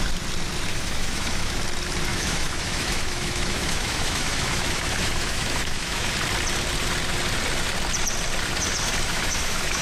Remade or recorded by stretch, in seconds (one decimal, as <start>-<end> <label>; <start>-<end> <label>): 0.0-0.7 recorded; 0.7-1.5 remade; 1.5-2.1 recorded; 2.1-6.1 remade; 6.1-9.1 recorded; 9.1-9.8 remade